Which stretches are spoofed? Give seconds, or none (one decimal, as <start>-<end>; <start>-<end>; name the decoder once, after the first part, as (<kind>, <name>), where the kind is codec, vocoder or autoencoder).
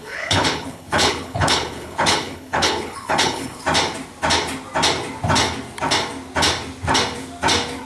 0.0-3.6 (codec, HILCodec)